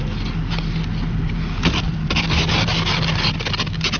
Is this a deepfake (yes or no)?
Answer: no